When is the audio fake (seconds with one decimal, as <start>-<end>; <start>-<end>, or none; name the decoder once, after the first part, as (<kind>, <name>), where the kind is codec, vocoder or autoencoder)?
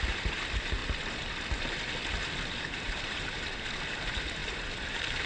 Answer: 0.0-0.8 (vocoder, BigVGAN v2); 2.6-5.3